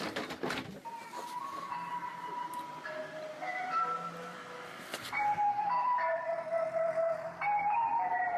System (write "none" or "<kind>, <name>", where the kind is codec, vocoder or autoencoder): vocoder, BigVGAN v2